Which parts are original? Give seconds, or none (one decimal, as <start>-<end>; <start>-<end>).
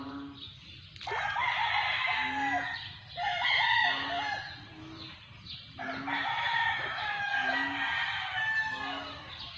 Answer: 0.0-6.3; 7.2-9.6